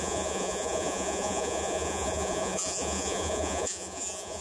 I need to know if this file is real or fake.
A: fake